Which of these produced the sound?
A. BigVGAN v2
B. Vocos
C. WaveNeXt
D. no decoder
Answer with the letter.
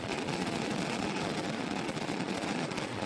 B